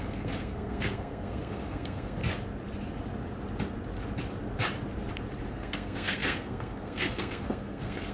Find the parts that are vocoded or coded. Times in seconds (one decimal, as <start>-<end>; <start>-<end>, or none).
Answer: 0.0-2.2; 5.5-8.1